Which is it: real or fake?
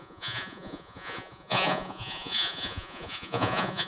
fake